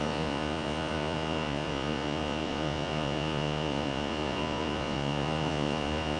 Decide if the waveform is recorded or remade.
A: remade